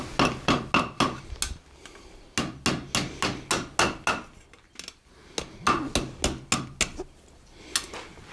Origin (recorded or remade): recorded